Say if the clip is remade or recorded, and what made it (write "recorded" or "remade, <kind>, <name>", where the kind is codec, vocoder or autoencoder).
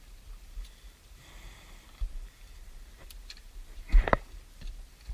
remade, vocoder, BigVGAN v2